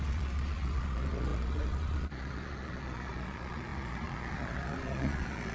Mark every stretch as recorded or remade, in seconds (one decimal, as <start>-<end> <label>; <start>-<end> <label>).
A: 0.0-5.5 remade

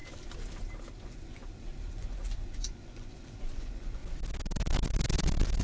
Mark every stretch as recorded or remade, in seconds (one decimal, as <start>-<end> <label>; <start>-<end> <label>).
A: 0.0-1.0 recorded; 1.0-1.4 remade; 1.4-1.9 recorded; 1.9-4.0 remade; 4.0-5.6 recorded

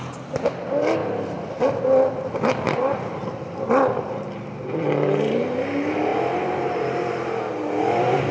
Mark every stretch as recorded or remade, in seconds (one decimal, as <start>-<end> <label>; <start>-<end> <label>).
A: 0.0-8.3 recorded

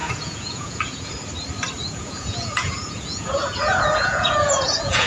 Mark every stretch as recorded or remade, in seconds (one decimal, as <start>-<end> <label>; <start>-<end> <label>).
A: 0.0-1.1 remade; 1.1-1.8 recorded; 1.8-5.1 remade

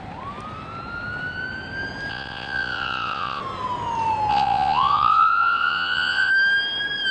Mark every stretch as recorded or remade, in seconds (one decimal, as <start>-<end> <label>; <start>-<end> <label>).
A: 0.0-2.1 recorded; 2.1-3.4 remade; 3.4-4.3 recorded; 4.3-6.3 remade; 6.3-7.1 recorded

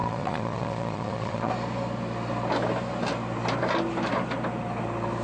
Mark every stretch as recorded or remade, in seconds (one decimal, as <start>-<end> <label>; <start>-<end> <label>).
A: 0.0-1.5 remade; 1.5-5.2 recorded

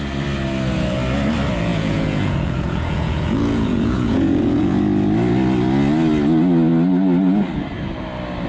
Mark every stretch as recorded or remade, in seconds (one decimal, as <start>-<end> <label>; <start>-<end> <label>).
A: 0.0-1.7 recorded; 1.7-4.8 remade; 4.8-8.5 recorded